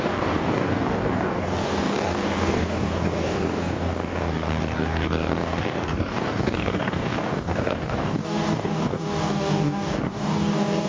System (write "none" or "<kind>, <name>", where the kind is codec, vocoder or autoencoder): codec, DAC